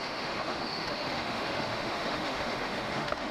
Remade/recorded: remade